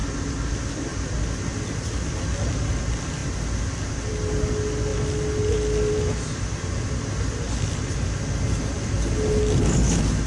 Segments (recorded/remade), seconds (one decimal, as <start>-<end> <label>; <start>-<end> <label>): 0.0-10.3 recorded